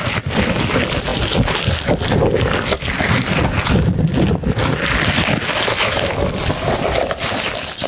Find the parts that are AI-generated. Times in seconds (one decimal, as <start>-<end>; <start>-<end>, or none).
none